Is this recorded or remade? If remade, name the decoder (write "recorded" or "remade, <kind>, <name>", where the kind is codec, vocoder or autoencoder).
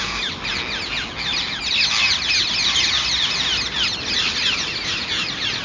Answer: recorded